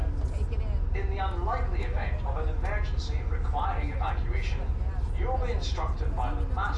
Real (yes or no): yes